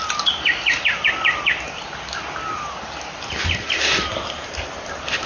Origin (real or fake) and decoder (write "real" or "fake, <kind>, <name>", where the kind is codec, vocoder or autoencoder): real